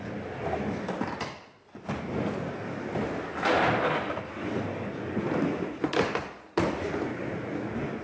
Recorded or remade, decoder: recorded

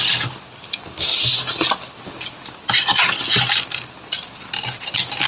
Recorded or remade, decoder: recorded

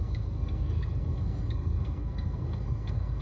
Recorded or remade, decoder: remade, codec, SNAC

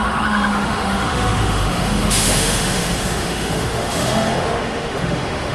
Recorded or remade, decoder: remade, autoencoder, DAC-VAE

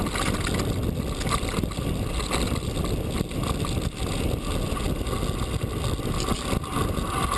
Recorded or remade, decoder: recorded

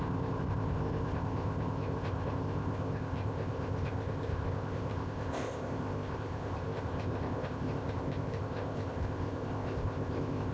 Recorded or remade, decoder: remade, codec, ZipCodec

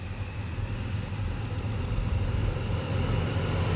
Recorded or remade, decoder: recorded